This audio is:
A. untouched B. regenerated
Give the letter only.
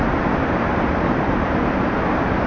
B